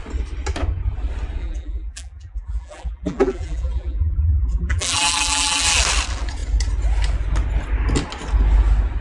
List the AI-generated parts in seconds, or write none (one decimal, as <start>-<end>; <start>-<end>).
1.4-5.6